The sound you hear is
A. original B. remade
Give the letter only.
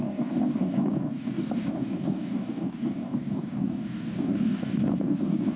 B